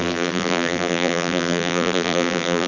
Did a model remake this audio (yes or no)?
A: yes